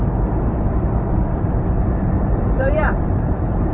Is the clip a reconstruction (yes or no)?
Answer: yes